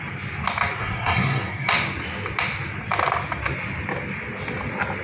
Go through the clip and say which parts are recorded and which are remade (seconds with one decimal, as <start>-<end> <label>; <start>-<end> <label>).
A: 0.0-0.8 recorded; 0.8-1.7 remade; 1.7-5.0 recorded